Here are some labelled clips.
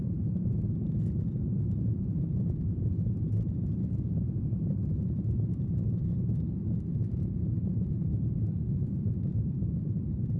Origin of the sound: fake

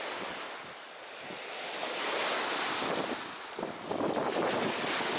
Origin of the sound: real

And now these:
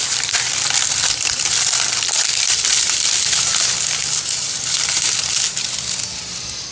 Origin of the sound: real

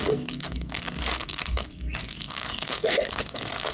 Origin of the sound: fake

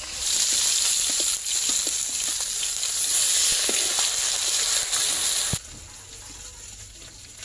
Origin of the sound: real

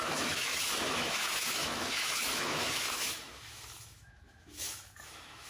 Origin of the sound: fake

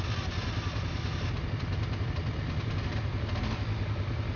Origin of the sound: real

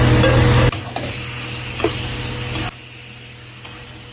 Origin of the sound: real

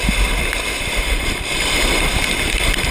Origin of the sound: fake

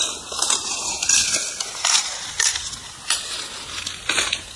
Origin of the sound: real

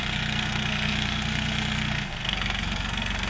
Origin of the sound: fake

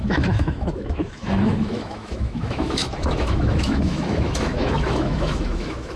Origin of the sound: fake